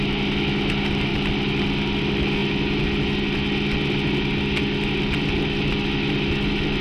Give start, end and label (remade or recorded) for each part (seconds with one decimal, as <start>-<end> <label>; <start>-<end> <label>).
0.0-6.8 recorded